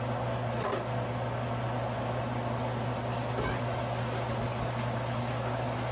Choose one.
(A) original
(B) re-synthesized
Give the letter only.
A